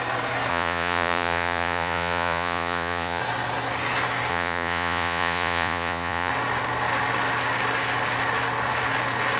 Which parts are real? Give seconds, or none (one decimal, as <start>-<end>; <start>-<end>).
0.0-0.5; 3.2-4.3; 6.3-9.4